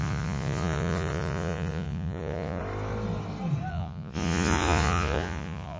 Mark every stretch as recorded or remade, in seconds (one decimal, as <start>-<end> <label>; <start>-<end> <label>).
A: 0.0-2.6 remade; 2.6-3.7 recorded; 3.7-5.8 remade